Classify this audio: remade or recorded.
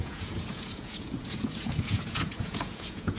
remade